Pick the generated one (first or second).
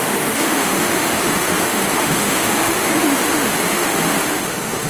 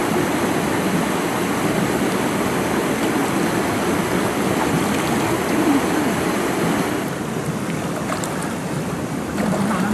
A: first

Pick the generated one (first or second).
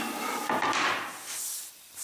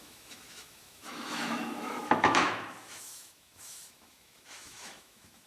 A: second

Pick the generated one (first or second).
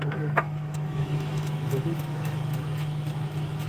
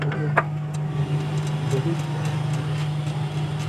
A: first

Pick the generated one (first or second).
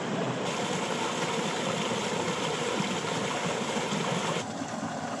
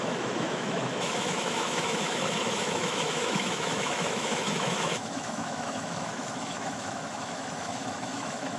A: second